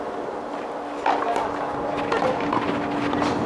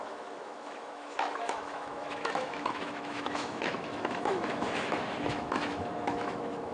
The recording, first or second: first